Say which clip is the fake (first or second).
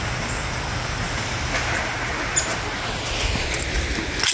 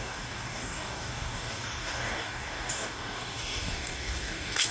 second